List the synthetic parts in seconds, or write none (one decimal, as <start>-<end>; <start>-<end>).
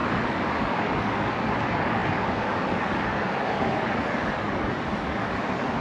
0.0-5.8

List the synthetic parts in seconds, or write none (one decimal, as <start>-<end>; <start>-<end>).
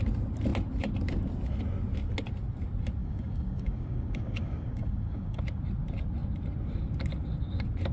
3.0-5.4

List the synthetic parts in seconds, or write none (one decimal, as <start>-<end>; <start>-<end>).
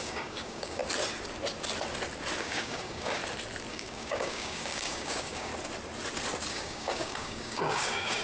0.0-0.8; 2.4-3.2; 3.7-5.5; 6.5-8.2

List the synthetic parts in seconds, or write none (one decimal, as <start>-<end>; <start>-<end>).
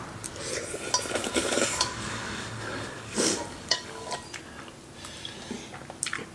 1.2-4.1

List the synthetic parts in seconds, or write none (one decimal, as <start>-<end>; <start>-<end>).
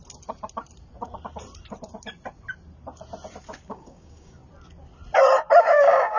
3.7-4.4; 5.6-6.2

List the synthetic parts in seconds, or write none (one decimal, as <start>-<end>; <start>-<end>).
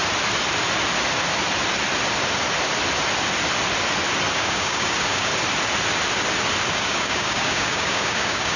4.3-5.3; 6.7-8.6